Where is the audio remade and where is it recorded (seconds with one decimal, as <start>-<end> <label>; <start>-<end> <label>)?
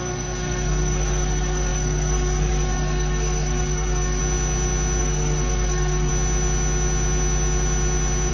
0.0-4.2 remade; 4.2-5.0 recorded; 5.0-6.1 remade; 6.1-8.3 recorded